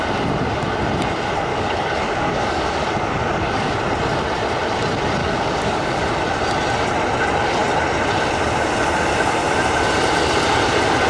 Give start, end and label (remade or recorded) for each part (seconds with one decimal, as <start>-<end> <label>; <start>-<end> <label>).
0.0-1.5 recorded; 1.5-3.7 remade; 3.7-5.2 recorded; 5.2-6.0 remade; 6.0-11.1 recorded